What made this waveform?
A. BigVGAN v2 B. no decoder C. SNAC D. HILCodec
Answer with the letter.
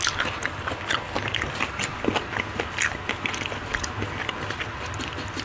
B